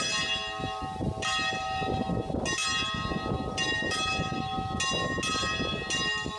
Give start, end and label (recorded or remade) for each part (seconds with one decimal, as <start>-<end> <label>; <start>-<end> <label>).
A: 0.0-6.4 recorded